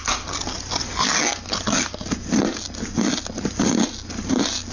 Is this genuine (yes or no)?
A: yes